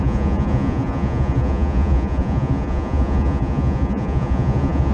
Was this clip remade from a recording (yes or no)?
yes